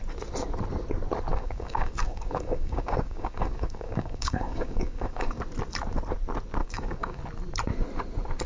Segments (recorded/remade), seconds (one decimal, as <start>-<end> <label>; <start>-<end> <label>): 0.0-1.3 recorded; 1.3-5.4 remade; 5.4-6.6 recorded; 6.6-7.2 remade; 7.2-8.5 recorded